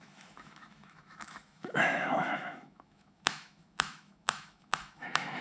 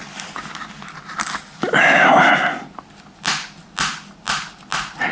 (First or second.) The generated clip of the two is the first